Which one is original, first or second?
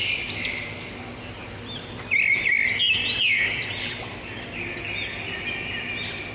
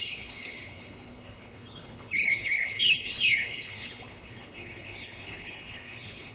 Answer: first